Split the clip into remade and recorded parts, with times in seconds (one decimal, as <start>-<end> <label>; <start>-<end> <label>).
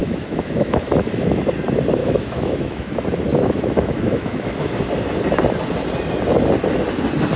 0.0-1.4 remade; 1.4-2.0 recorded; 2.0-2.9 remade; 2.9-3.3 recorded; 3.3-4.7 remade; 4.7-7.4 recorded